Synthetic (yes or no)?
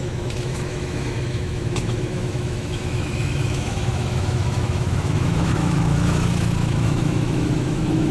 yes